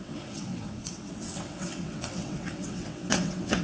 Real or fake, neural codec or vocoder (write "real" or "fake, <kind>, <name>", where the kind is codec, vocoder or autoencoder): fake, vocoder, WaveNeXt